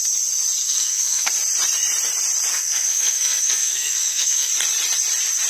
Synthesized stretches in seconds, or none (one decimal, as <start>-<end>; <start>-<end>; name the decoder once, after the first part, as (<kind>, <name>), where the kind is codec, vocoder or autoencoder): 0.6-1.3 (codec, SNAC); 2.5-4.5